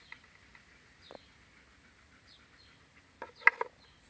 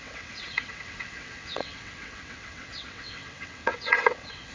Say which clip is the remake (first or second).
second